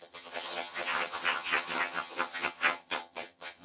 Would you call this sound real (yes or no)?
no